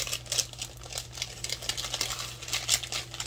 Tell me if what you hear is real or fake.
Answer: real